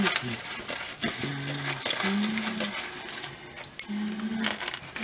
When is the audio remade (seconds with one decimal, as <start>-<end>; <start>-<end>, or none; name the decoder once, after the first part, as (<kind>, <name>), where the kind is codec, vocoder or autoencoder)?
none